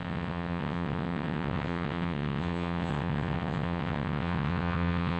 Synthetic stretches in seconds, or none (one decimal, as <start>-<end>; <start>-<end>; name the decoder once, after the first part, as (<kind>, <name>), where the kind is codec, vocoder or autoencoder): 0.0-5.2 (vocoder, WaveNeXt)

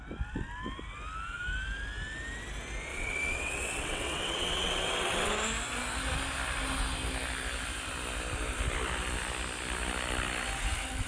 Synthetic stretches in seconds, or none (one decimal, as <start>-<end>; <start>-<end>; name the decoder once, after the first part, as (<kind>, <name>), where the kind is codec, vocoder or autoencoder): 2.9-5.3 (vocoder, WaveNeXt)

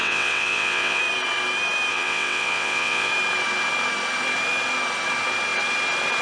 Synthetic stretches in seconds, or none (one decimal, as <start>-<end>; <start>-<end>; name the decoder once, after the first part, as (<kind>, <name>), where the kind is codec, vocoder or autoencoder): 0.0-1.0 (vocoder, WaveNeXt); 1.9-3.1

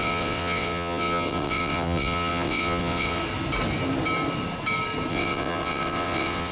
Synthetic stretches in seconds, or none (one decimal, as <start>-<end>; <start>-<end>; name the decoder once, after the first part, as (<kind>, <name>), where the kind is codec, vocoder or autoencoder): 0.0-3.2 (vocoder, WaveNeXt); 5.1-6.5

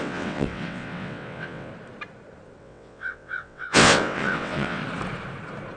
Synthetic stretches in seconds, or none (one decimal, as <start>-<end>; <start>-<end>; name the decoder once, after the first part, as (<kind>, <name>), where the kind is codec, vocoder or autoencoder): 0.0-1.7 (vocoder, WaveNeXt); 2.6-4.8

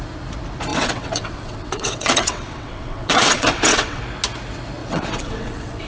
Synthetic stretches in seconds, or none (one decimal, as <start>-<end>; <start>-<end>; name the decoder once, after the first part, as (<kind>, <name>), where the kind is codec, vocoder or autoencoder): 0.7-4.0 (vocoder, WaveNeXt); 4.8-5.9